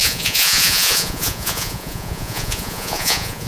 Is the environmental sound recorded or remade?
remade